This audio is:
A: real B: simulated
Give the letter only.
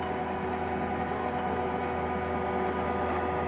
A